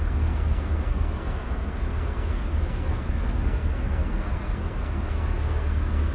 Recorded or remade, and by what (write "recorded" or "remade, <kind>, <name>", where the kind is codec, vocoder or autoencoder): remade, codec, SNAC